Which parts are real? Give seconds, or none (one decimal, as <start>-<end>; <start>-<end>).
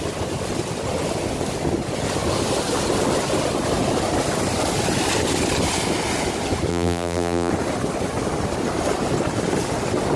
0.0-6.7; 7.5-10.2